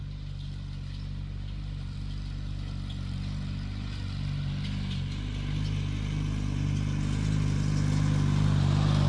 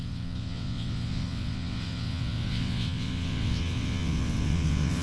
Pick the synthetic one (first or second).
second